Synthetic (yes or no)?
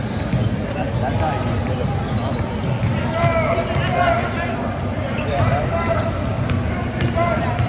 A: no